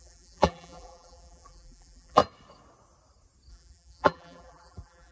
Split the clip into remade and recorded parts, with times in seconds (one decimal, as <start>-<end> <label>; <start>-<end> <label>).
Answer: 0.0-2.2 remade; 2.2-3.5 recorded; 3.5-5.1 remade